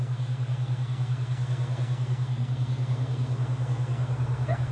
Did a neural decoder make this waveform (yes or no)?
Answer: yes